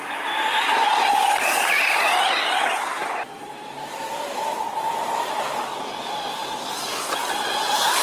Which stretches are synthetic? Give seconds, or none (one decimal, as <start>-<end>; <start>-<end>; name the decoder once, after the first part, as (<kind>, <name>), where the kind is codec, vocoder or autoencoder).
0.0-6.4 (vocoder, BigVGAN v2); 6.9-8.0